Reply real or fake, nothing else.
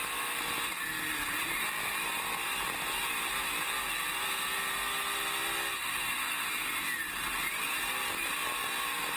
real